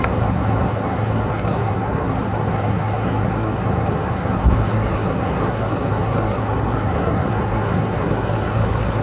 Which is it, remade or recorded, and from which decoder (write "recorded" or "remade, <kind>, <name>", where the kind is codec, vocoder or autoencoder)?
remade, codec, SNAC